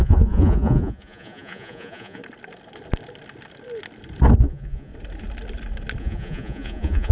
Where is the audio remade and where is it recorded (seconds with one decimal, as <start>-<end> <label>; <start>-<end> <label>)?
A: 0.0-2.2 remade; 2.2-4.4 recorded; 4.4-4.9 remade; 4.9-6.0 recorded; 6.0-7.1 remade